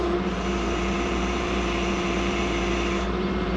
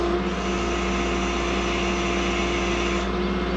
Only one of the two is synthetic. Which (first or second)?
first